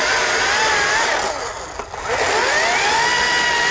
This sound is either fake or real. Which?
real